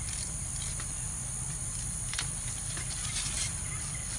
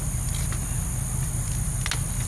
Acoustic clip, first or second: second